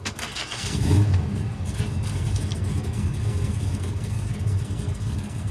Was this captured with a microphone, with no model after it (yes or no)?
no